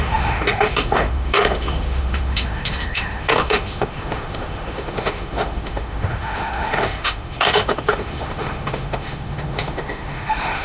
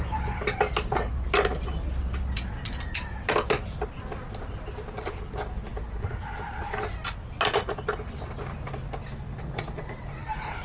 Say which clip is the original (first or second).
second